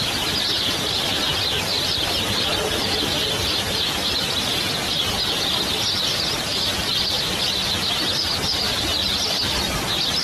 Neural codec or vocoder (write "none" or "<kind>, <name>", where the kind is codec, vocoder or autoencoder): none